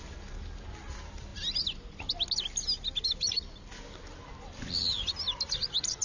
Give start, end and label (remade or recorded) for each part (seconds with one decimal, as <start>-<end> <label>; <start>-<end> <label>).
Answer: 0.0-6.0 recorded